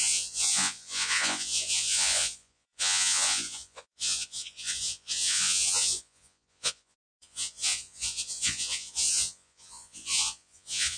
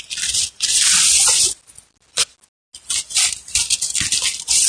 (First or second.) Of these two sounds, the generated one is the first